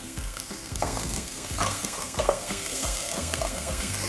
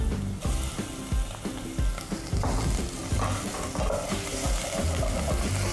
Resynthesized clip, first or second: first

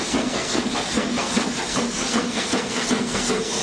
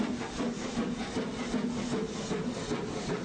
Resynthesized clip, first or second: first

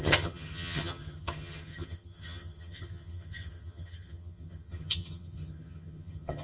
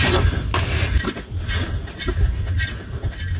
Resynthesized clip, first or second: first